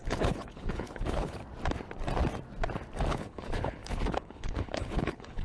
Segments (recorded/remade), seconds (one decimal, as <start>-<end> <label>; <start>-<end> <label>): 0.0-1.4 remade; 1.4-3.1 recorded; 3.1-5.4 remade